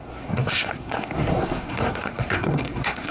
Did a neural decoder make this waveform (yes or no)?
yes